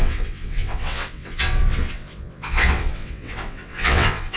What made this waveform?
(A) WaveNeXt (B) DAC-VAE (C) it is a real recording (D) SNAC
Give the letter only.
A